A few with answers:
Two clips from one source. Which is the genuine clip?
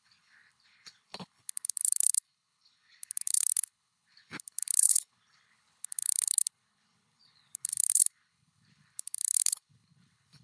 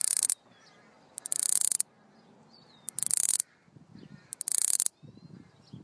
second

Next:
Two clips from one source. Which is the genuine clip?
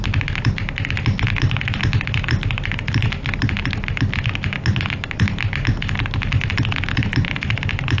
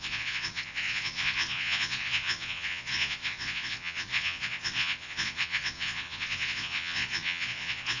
first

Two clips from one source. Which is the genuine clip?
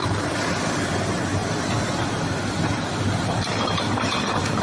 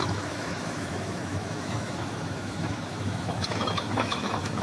first